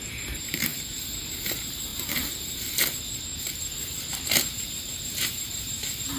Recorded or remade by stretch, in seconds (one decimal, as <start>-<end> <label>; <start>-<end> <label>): 0.0-6.2 remade